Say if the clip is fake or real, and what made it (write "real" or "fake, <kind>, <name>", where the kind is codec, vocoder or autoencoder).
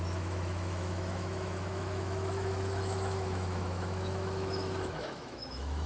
fake, autoencoder, DAC-VAE